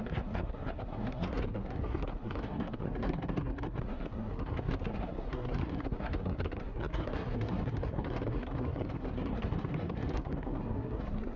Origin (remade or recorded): remade